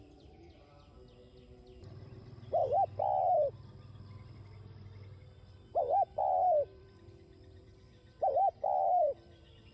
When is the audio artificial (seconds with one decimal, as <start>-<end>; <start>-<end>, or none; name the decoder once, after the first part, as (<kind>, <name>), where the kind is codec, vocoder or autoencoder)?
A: 0.0-2.6 (vocoder, BigVGAN v2); 6.2-9.7